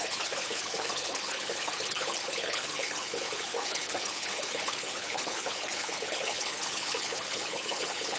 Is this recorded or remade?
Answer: remade